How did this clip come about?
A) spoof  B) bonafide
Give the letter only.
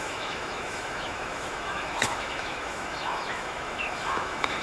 A